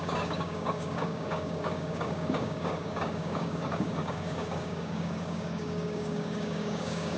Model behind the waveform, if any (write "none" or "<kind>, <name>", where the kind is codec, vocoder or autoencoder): codec, DAC